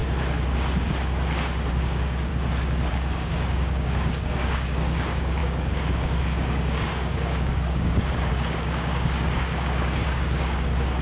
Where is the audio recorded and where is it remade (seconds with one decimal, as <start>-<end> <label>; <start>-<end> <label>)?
0.0-1.7 recorded; 1.7-2.3 remade; 2.3-2.9 recorded; 2.9-11.0 remade